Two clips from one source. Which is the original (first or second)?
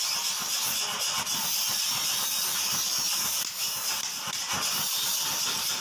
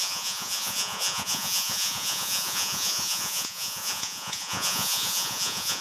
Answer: first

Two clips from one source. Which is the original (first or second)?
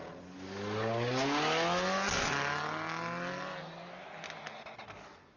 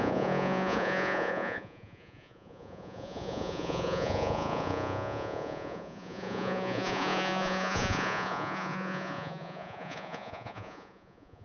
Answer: first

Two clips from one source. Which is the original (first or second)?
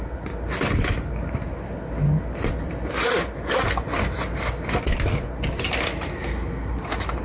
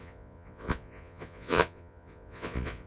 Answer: first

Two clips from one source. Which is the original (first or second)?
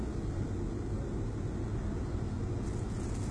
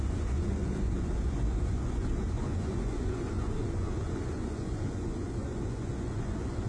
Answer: first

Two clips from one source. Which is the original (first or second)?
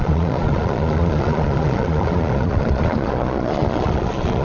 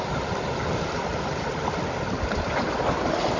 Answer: second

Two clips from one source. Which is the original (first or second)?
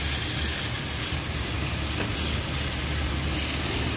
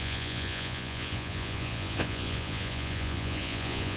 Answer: first